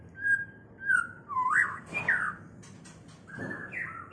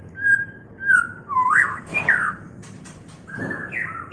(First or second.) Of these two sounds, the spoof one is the second